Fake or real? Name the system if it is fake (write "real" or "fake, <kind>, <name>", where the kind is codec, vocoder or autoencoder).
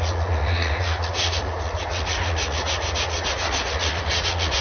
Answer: fake, vocoder, Vocos